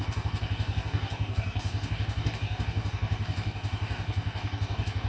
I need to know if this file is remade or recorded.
remade